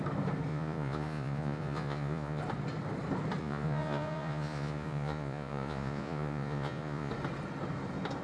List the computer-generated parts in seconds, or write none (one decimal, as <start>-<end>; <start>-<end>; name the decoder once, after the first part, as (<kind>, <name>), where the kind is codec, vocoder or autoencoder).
0.5-2.4 (vocoder, Vocos); 3.4-7.1